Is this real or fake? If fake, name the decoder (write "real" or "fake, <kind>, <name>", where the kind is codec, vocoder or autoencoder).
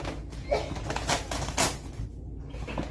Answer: real